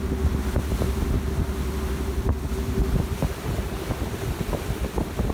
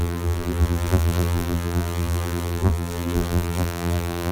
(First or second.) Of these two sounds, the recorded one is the first